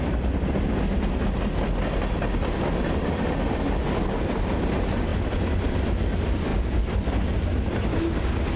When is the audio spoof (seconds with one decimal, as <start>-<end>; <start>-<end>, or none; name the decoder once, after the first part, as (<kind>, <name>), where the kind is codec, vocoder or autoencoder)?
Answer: none